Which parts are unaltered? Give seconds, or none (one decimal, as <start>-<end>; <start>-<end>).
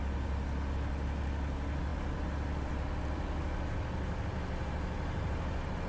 0.0-5.9